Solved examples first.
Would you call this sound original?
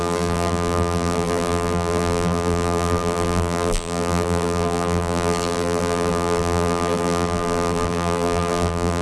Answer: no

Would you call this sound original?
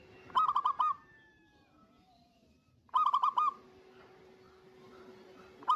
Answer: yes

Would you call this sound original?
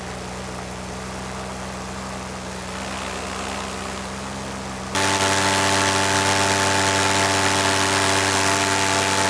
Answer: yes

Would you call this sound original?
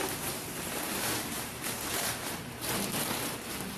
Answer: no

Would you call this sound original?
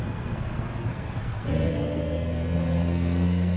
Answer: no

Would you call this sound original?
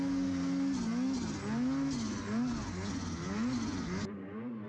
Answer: yes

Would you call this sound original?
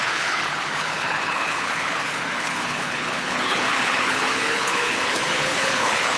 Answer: no